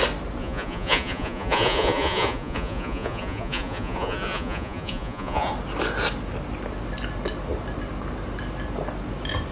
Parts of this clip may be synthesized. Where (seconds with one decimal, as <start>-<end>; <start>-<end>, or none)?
0.4-5.5